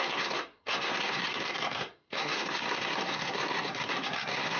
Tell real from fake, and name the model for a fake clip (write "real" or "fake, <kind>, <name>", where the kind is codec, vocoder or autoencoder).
fake, codec, SNAC